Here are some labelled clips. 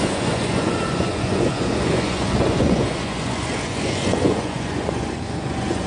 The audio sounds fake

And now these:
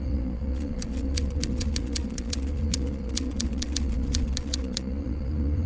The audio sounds fake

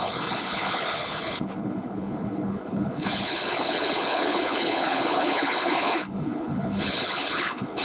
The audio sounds fake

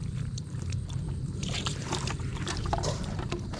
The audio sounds fake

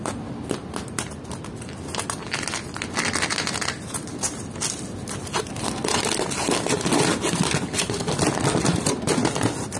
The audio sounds real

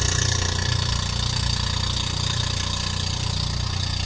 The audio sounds real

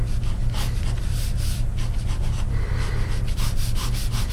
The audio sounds real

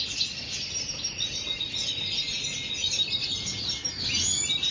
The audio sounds real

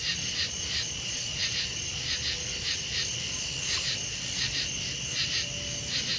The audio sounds real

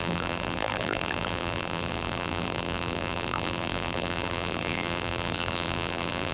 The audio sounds fake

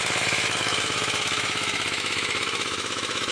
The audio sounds fake